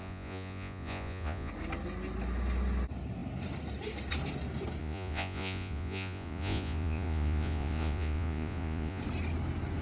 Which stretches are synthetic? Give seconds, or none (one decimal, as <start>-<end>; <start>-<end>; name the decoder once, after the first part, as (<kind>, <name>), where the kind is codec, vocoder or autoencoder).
0.0-1.5 (vocoder, Vocos); 4.8-9.0